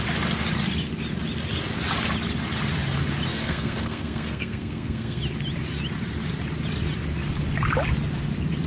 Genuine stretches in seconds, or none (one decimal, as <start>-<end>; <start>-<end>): 0.0-3.3; 5.2-8.7